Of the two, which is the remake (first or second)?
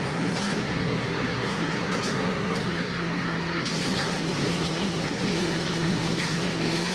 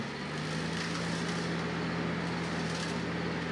first